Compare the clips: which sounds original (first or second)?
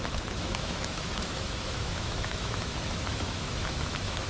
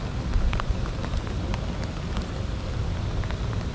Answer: second